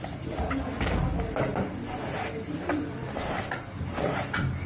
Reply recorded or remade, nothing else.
recorded